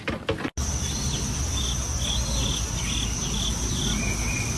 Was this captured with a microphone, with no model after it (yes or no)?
yes